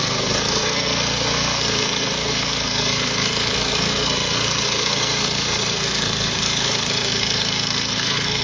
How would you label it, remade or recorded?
remade